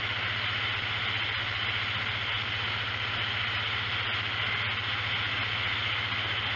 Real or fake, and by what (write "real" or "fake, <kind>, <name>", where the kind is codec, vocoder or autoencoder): real